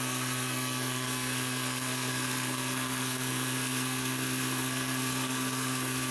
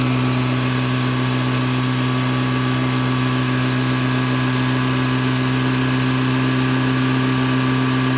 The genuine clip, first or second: second